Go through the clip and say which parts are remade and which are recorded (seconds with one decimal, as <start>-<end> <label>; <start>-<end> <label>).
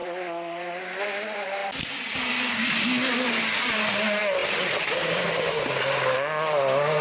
0.0-0.8 remade; 0.8-1.6 recorded; 1.6-2.5 remade; 2.5-7.0 recorded